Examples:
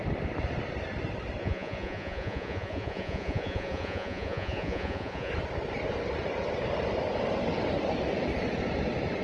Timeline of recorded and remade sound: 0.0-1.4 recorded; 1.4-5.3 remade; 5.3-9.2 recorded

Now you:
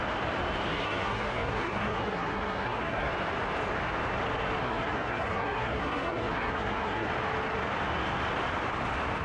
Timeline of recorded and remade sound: 0.0-0.7 recorded; 0.7-3.1 remade; 3.1-4.6 recorded; 4.6-7.1 remade; 7.1-9.2 recorded

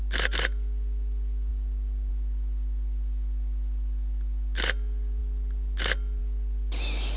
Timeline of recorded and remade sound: 0.0-7.2 recorded

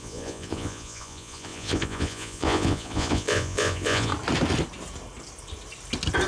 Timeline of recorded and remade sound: 0.0-4.1 remade; 4.1-6.3 recorded

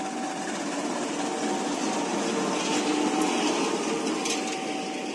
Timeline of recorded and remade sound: 0.0-5.1 recorded

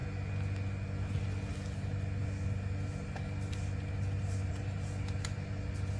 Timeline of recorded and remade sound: 0.0-6.0 recorded

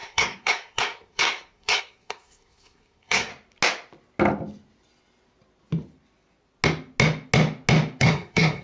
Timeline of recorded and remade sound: 0.0-3.3 remade; 3.3-8.0 recorded; 8.0-8.6 remade

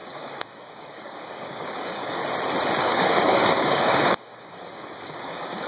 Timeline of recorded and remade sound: 0.0-2.2 remade; 2.2-2.8 recorded; 2.8-5.7 remade